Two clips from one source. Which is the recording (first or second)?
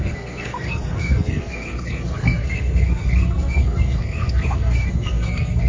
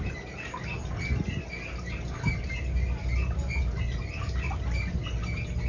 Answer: second